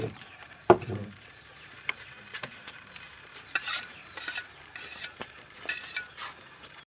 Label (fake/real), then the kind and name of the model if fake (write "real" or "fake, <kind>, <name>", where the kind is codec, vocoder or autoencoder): fake, vocoder, BigVGAN v2